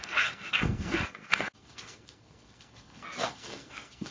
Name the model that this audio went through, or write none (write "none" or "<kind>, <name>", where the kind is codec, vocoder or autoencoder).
codec, SNAC